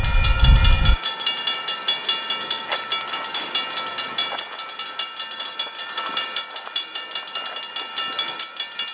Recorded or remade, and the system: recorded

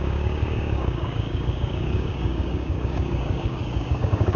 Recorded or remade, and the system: remade, codec, DAC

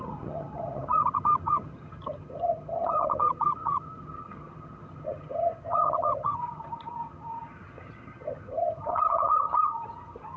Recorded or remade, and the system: remade, vocoder, HiFi-GAN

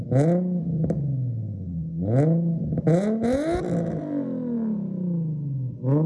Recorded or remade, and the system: recorded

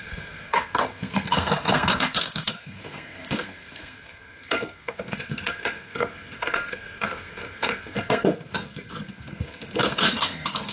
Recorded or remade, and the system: remade, codec, SNAC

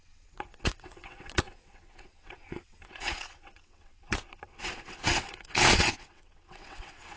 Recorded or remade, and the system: remade, vocoder, WaveNeXt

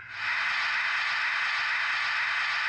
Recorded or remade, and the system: recorded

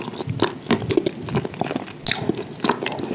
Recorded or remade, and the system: recorded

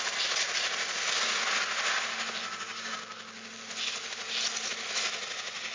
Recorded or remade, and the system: recorded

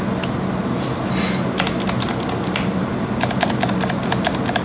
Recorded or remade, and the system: recorded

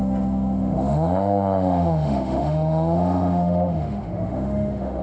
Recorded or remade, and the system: remade, autoencoder, DAC-VAE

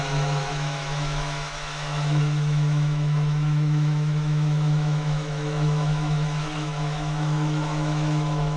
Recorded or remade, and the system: remade, autoencoder, DAC-VAE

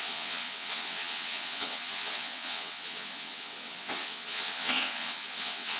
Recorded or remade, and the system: remade, vocoder, WaveNeXt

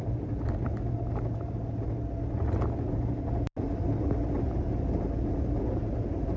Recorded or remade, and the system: recorded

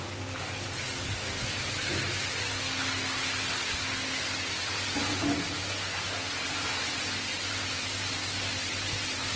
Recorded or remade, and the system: recorded